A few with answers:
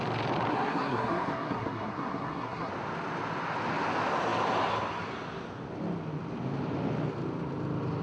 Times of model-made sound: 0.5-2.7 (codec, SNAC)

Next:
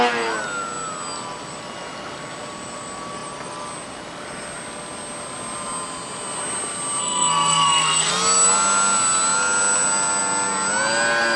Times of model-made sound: 7.0-8.1 (codec, SNAC)

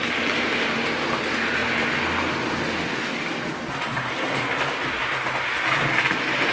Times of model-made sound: none

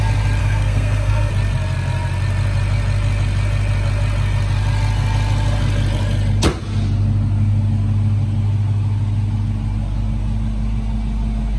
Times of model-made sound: 0.4-1.3 (codec, SNAC)

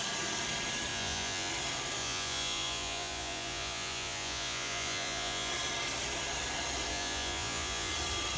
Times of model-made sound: 0.9-1.5 (vocoder, Vocos); 2.0-5.5; 6.9-7.9